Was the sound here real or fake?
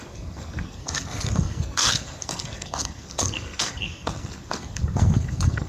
fake